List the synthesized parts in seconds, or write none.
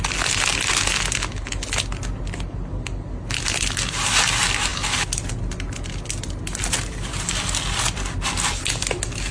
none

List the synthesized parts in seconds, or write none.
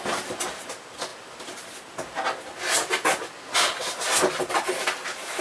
none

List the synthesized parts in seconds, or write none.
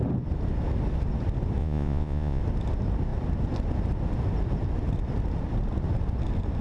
1.6-2.4 (vocoder, Vocos)